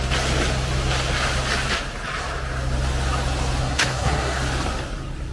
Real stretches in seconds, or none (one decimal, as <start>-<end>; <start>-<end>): 0.0-3.6; 4.4-5.3